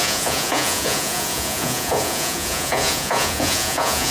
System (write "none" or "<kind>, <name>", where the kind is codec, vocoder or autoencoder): vocoder, Vocos